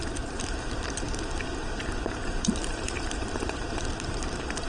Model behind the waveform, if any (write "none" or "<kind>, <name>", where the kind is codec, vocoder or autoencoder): vocoder, BigVGAN v2